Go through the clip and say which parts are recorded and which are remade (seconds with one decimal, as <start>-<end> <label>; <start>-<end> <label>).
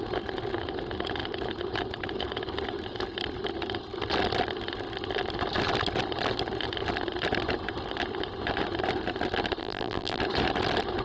0.0-9.6 recorded; 9.6-10.2 remade; 10.2-11.0 recorded